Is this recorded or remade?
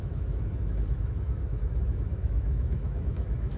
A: remade